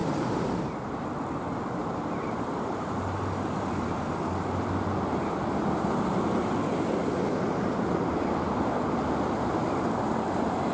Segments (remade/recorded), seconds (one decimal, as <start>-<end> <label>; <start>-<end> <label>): 0.0-0.5 remade; 0.5-1.8 recorded; 1.8-4.0 remade; 4.0-10.7 recorded